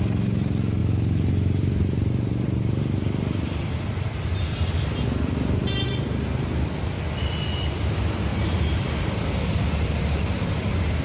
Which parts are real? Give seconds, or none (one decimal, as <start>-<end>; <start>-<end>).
0.0-0.8; 4.7-8.3